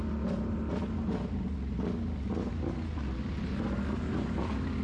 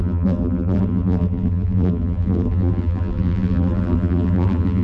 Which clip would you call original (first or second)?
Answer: first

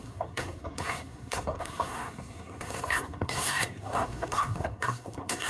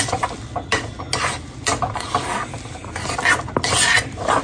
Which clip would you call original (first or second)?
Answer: second